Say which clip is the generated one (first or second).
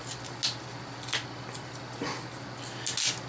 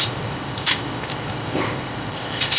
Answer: second